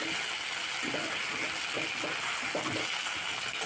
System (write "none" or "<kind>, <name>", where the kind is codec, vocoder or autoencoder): none